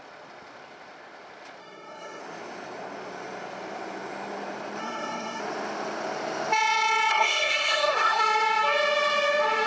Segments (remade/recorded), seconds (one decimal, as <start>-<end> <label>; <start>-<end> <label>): 0.0-1.6 recorded; 1.6-2.2 remade; 2.2-4.8 recorded; 4.8-5.4 remade; 5.4-7.1 recorded; 7.1-8.2 remade; 8.2-9.7 recorded